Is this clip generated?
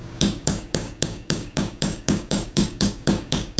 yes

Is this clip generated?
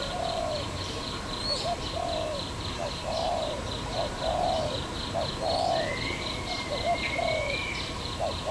yes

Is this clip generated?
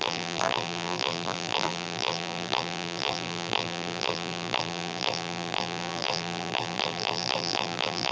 yes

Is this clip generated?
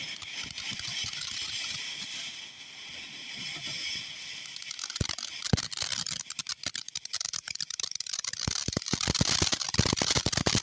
no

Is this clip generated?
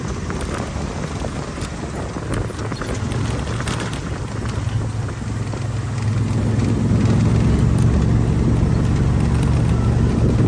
no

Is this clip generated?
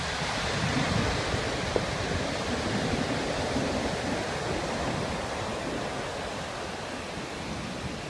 no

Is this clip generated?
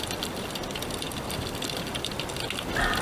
yes